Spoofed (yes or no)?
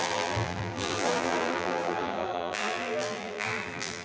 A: yes